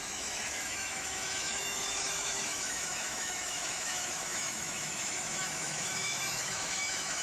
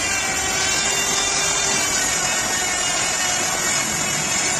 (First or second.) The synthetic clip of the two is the first